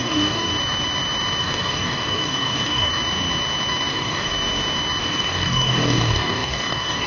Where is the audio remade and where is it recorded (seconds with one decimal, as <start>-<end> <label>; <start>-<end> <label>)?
0.0-0.5 remade; 0.5-1.4 recorded; 1.4-2.9 remade; 2.9-3.9 recorded; 3.9-4.3 remade; 4.3-5.0 recorded; 5.0-7.1 remade